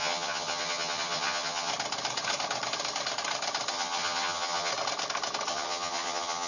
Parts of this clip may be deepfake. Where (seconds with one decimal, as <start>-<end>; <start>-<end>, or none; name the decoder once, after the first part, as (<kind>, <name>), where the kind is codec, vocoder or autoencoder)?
0.0-1.7 (vocoder, HiFi-GAN); 3.7-4.7; 5.5-6.5